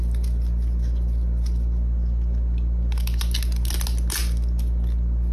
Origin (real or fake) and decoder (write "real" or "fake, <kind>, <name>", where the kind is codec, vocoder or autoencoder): real